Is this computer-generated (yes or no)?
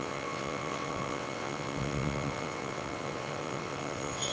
yes